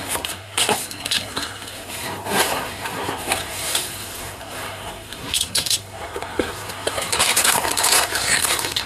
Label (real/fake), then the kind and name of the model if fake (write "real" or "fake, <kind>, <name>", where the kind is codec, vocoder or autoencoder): fake, codec, SNAC